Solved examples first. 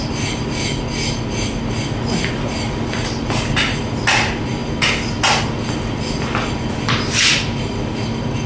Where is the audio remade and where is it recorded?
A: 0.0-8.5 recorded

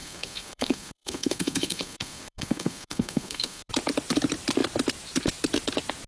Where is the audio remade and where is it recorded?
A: 0.0-3.7 remade; 3.7-6.1 recorded

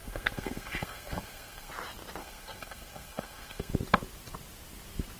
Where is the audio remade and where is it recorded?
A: 0.0-1.7 remade; 1.7-2.2 recorded; 2.2-3.7 remade; 3.7-5.2 recorded

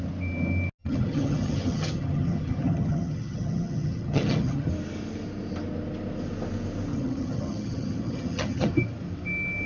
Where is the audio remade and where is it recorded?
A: 0.0-0.8 recorded; 0.8-4.7 remade; 4.7-6.9 recorded; 6.9-8.7 remade; 8.7-9.7 recorded

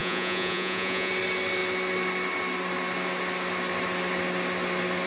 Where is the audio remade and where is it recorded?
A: 0.0-1.1 remade; 1.1-5.1 recorded

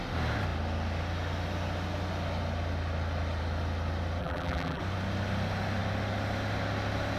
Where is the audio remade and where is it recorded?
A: 0.0-4.2 recorded; 4.2-4.8 remade; 4.8-7.2 recorded